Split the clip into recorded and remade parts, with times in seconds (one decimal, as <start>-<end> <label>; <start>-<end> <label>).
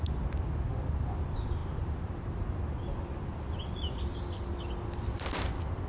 0.0-1.6 recorded; 1.6-2.4 remade; 2.4-5.9 recorded